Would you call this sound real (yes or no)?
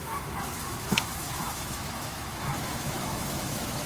no